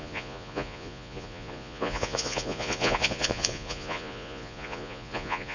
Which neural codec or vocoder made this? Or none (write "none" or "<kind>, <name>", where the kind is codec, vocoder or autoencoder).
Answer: vocoder, Vocos